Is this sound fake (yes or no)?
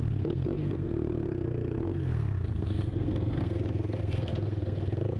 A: yes